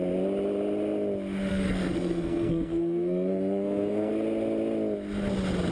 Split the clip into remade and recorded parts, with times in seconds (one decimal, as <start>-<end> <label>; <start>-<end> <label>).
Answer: 0.0-1.5 recorded; 1.5-4.1 remade; 4.1-5.7 recorded